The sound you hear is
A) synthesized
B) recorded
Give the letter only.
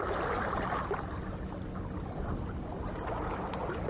B